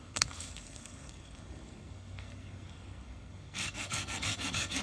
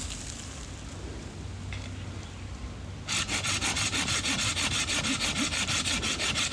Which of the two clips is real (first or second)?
second